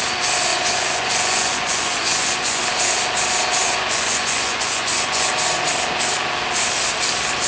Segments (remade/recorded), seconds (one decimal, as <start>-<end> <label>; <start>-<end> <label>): 0.0-0.5 recorded; 0.5-2.6 remade; 2.6-3.6 recorded; 3.6-5.3 remade; 5.3-7.5 recorded